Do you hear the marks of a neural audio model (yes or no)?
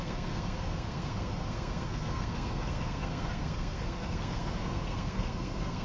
yes